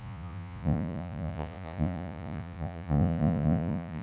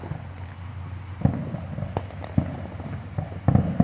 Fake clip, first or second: first